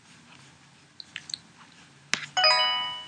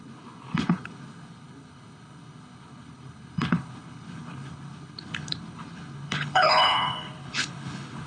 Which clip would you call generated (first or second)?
second